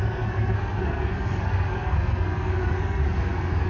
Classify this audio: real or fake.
fake